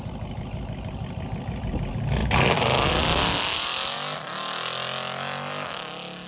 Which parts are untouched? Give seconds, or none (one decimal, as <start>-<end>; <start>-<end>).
0.0-6.3